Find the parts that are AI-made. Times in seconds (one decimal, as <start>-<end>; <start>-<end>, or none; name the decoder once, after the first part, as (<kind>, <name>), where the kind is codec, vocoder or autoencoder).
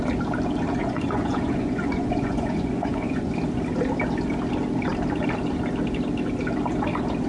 0.8-3.3 (vocoder, Vocos)